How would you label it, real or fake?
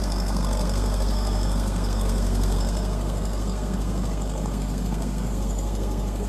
fake